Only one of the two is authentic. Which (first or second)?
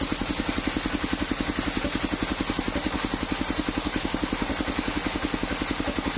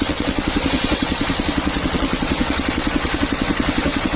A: first